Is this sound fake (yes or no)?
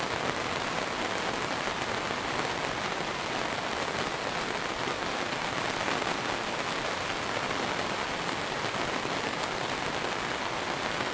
no